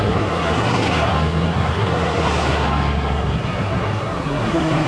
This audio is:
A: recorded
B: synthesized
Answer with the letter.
B